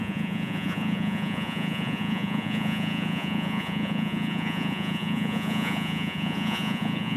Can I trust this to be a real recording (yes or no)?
no